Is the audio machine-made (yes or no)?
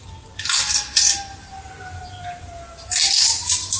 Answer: no